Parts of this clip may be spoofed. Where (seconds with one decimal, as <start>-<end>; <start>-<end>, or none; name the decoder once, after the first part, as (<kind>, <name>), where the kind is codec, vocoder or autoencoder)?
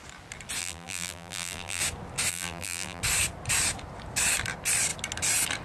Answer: 0.6-1.8 (vocoder, BigVGAN v2); 2.3-3.0